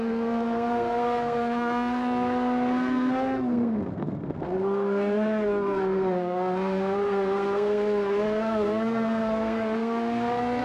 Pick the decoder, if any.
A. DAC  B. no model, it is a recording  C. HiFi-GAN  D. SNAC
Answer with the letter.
D